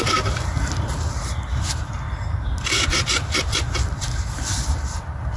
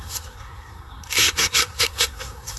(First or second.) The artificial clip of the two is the second